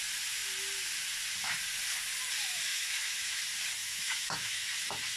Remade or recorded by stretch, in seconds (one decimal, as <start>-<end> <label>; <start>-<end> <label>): 0.0-2.7 recorded; 2.7-3.4 remade; 3.4-3.8 recorded; 3.8-4.7 remade; 4.7-5.2 recorded